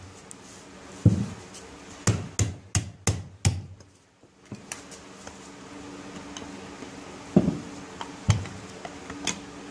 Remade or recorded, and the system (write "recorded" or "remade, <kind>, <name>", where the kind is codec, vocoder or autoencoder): recorded